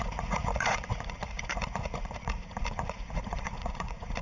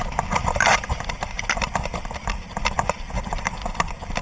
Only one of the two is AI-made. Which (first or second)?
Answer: first